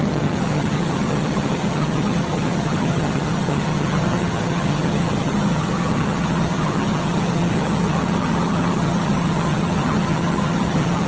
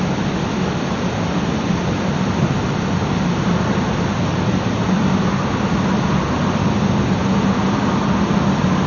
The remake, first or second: first